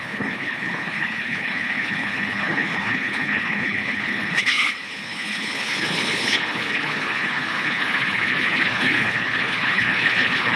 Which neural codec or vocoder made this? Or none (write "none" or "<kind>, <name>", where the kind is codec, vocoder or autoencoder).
codec, HILCodec